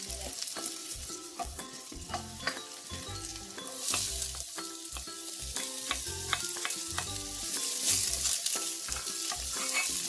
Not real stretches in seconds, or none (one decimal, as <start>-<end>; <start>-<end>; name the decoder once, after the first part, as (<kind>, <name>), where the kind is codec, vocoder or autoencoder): 0.8-2.1 (vocoder, WaveNeXt)